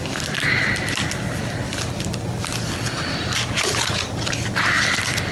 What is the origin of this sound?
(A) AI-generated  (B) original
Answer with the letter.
B